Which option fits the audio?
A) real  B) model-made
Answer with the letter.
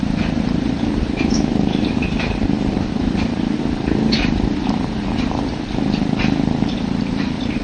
B